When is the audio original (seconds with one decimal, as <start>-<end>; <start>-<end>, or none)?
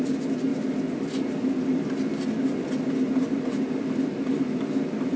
0.0-5.2